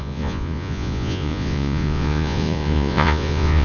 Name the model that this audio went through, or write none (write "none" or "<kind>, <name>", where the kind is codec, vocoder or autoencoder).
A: vocoder, Vocos